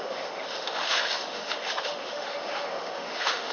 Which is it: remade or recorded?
remade